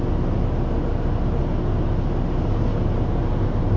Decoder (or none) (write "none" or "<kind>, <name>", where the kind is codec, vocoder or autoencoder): none